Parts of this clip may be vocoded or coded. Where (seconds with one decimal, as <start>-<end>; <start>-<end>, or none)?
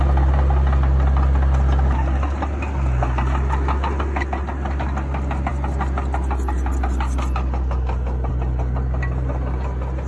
none